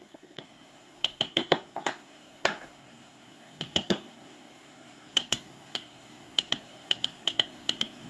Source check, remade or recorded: remade